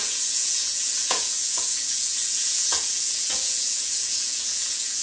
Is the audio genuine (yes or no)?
no